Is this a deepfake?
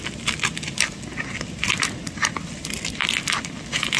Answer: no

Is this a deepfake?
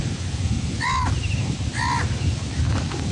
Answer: no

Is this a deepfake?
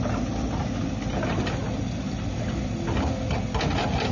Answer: no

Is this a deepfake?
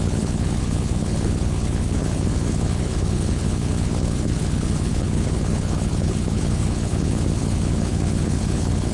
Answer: yes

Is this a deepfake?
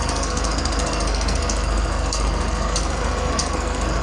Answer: yes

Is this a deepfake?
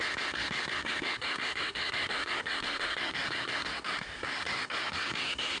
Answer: yes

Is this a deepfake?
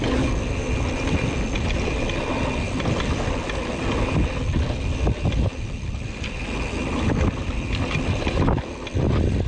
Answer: no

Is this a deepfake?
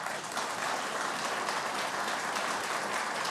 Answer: no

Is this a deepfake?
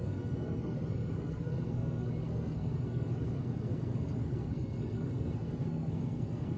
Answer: yes